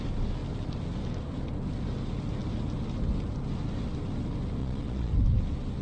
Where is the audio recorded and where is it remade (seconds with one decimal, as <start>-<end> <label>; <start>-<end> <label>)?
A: 0.0-4.6 recorded; 4.6-5.1 remade; 5.1-5.8 recorded